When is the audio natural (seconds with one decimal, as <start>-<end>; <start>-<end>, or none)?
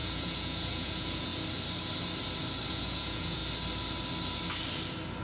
1.3-2.7; 3.4-5.2